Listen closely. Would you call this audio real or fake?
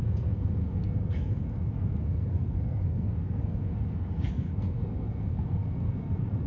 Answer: fake